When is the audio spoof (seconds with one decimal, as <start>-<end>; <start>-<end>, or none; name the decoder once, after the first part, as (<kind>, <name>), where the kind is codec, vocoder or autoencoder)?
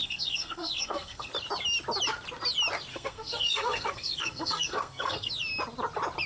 0.0-1.3 (codec, SNAC); 2.9-5.3